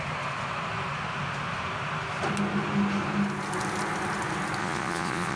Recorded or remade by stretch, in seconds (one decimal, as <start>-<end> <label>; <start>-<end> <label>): 0.0-4.6 recorded; 4.6-5.4 remade